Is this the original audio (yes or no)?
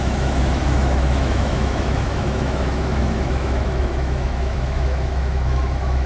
no